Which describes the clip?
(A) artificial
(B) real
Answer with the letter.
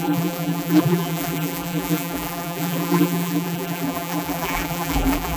A